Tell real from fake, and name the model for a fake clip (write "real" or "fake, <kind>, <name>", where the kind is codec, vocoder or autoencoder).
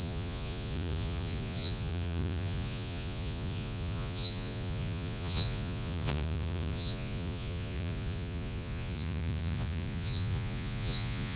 fake, vocoder, Vocos